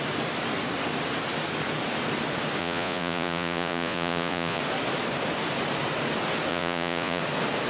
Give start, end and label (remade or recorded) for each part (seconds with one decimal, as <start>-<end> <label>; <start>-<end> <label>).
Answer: 0.0-2.6 recorded; 2.6-4.6 remade; 4.6-6.5 recorded; 6.5-7.2 remade; 7.2-7.7 recorded